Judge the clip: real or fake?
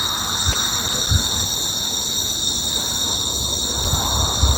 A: real